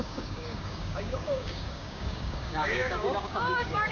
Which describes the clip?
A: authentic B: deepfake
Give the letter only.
B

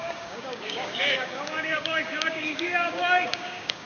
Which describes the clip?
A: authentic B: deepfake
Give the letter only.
B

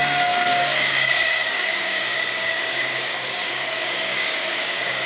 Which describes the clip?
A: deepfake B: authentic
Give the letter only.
A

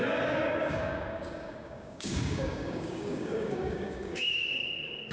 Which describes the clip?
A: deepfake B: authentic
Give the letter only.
A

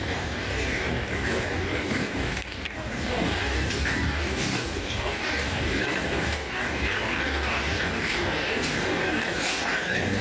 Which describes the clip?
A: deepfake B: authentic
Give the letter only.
A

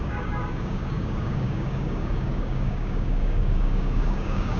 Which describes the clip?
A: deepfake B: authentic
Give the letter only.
A